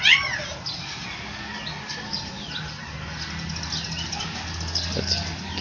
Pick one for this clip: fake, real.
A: real